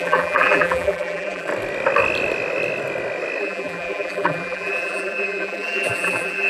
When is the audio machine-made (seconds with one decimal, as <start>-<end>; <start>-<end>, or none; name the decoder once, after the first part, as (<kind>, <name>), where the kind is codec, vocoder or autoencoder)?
0.0-1.5 (vocoder, BigVGAN v2); 3.4-6.5

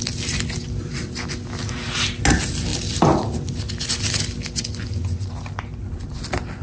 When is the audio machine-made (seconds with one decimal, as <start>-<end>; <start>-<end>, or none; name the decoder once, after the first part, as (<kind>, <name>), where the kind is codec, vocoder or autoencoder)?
none

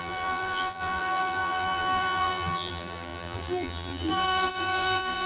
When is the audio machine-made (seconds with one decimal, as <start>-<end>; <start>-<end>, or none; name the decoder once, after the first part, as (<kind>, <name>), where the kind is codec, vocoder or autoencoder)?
0.0-5.3 (vocoder, BigVGAN v2)

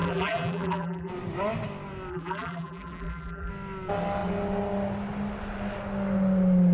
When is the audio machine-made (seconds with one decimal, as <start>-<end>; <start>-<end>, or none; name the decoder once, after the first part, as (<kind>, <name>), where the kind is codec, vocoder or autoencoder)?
0.0-1.1 (vocoder, BigVGAN v2); 2.1-3.5

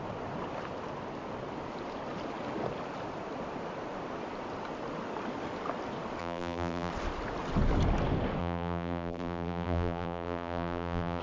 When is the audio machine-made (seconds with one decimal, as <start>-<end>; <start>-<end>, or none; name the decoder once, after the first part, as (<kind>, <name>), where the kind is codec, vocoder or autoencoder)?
6.2-6.9 (vocoder, BigVGAN v2); 8.4-11.2

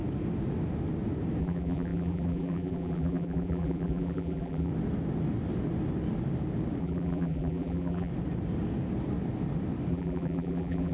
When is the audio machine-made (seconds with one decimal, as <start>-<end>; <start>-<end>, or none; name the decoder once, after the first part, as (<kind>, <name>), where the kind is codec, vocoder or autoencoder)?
1.4-4.7 (vocoder, BigVGAN v2); 6.8-8.1; 9.9-10.9

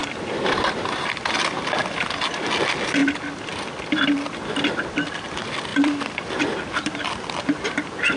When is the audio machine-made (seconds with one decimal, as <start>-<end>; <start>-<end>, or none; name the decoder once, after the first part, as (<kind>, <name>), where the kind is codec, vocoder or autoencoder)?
0.0-1.0 (vocoder, BigVGAN v2); 3.0-4.3; 5.7-6.4